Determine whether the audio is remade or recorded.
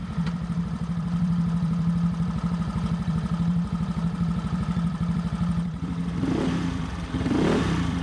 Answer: remade